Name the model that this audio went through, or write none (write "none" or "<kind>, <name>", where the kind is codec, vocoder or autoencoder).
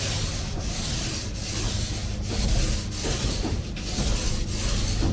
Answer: none